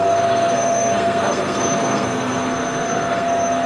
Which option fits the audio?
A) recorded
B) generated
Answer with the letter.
B